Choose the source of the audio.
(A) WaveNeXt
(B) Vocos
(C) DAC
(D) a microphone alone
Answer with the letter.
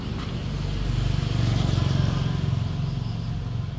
D